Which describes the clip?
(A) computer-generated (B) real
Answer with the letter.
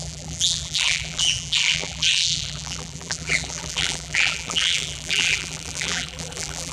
A